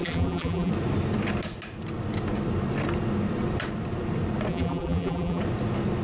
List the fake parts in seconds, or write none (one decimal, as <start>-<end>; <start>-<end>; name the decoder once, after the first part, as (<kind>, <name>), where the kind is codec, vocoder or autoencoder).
0.0-0.7 (vocoder, BigVGAN v2); 4.5-5.4